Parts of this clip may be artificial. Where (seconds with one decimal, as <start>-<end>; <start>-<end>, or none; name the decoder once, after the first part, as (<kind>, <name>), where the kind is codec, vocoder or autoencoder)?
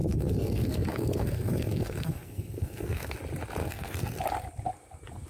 0.0-3.2 (codec, SNAC); 3.6-4.2